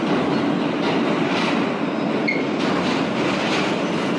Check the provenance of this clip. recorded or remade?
recorded